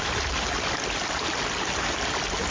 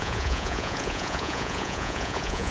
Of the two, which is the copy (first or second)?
second